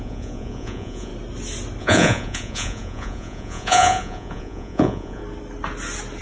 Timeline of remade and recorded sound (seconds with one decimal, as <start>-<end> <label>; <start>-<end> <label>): 0.0-1.1 remade; 1.1-1.8 recorded; 1.8-5.2 remade; 5.2-6.2 recorded